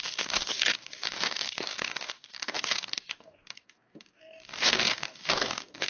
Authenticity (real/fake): fake